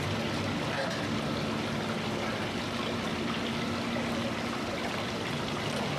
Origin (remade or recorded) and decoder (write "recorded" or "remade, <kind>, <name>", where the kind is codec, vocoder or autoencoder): recorded